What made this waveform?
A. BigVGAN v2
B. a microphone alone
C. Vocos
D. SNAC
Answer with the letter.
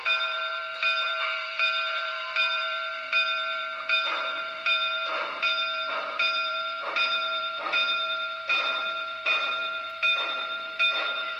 A